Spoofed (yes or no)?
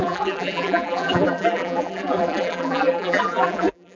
yes